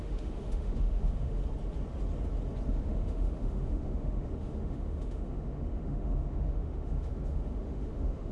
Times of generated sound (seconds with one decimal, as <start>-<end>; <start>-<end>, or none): 0.0-1.4; 2.7-8.3